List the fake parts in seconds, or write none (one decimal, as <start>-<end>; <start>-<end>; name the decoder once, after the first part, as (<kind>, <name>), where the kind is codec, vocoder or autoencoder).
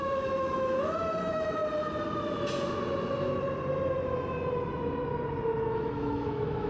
0.0-1.6 (autoencoder, DAC-VAE); 5.6-6.7